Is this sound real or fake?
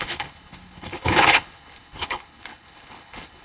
fake